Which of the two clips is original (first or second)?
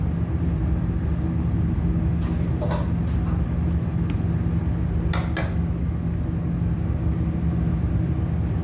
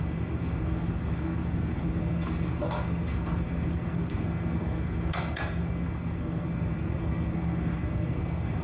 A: first